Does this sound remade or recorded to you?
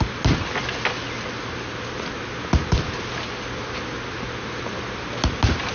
recorded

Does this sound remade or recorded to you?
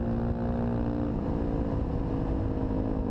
recorded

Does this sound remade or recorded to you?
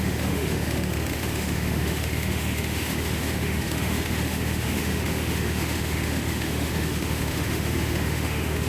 remade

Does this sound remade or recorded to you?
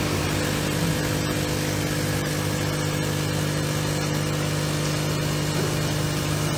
recorded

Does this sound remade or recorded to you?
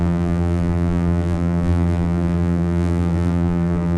remade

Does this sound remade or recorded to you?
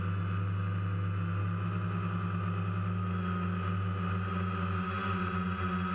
recorded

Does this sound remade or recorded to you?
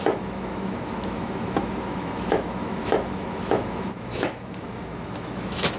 remade